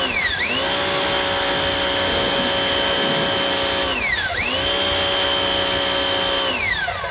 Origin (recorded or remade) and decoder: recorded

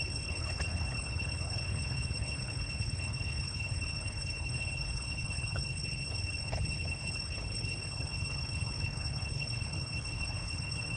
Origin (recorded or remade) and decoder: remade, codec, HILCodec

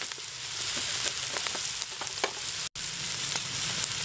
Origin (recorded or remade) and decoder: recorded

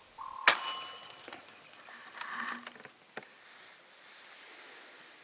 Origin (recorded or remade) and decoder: recorded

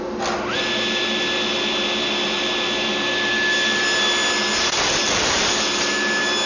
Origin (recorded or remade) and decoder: recorded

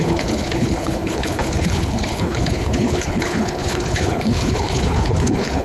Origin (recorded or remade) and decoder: remade, codec, HILCodec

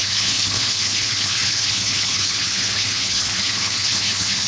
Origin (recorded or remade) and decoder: remade, codec, HILCodec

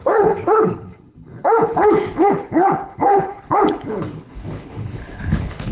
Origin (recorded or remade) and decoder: remade, codec, HILCodec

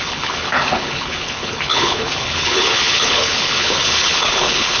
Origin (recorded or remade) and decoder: remade, codec, HILCodec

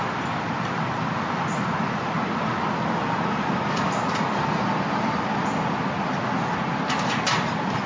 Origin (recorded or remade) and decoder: recorded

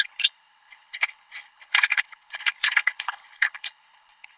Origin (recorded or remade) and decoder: remade, codec, HILCodec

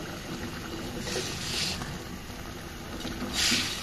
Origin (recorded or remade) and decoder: recorded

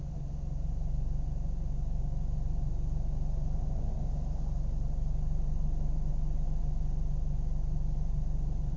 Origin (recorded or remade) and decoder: recorded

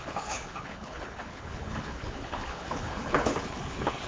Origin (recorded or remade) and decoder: remade, codec, HILCodec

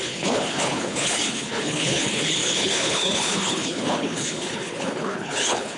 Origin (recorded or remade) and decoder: remade, codec, HILCodec